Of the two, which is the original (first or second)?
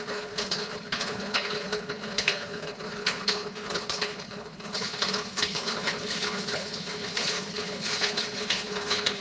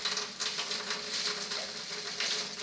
second